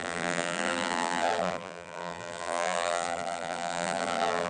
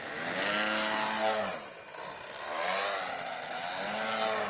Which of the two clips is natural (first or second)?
second